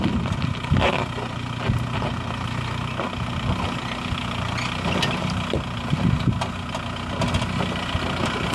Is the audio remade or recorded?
recorded